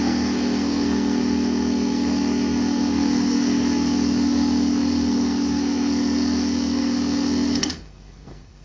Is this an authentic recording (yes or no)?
no